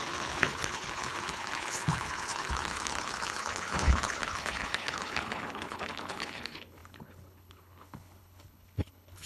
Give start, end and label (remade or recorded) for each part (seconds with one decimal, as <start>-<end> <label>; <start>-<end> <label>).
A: 0.0-9.3 remade